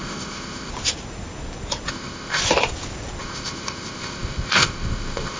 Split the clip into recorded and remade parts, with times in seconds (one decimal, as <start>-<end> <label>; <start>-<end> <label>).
0.0-0.7 remade; 0.7-1.9 recorded; 1.9-2.4 remade; 2.4-3.2 recorded; 3.2-5.4 remade